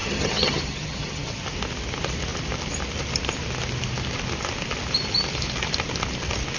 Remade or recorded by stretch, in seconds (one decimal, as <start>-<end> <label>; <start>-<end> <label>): 0.0-1.4 remade; 1.4-6.6 recorded